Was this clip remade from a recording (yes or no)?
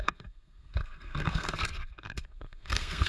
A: yes